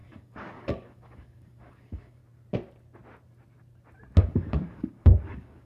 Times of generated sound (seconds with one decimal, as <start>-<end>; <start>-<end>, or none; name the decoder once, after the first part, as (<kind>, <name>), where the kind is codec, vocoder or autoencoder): 0.0-2.2 (codec, DAC); 4.2-5.7